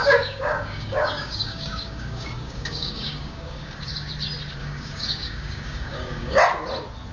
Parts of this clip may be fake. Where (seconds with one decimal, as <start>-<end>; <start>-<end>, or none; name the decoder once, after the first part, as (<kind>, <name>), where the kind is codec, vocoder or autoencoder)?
0.0-3.9 (codec, DAC); 4.6-6.4